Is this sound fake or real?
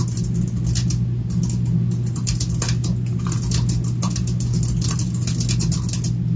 real